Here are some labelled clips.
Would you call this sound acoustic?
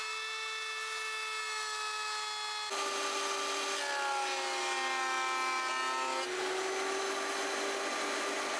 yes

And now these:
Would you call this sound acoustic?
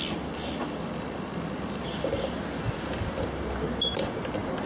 yes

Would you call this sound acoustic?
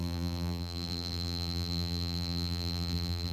no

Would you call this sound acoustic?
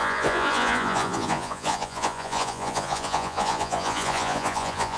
no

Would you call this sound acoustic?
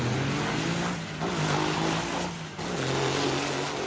yes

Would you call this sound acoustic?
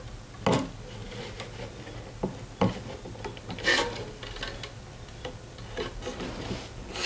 yes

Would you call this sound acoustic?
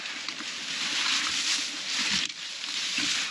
yes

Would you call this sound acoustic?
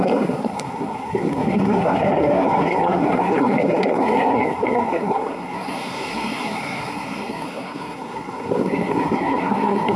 no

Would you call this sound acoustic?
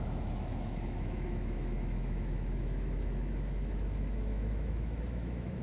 no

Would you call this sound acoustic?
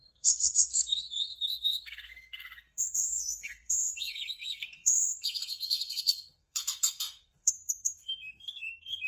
no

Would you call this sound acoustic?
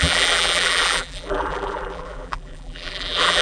no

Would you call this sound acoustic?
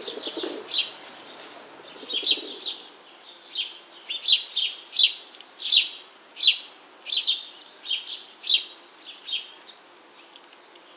yes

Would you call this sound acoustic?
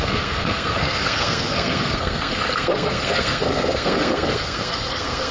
no